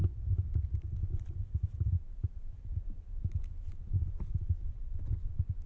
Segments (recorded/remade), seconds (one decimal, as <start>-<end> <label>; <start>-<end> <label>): 0.0-3.4 remade; 3.4-5.7 recorded